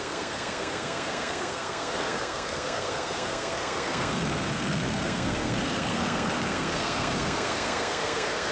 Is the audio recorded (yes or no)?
no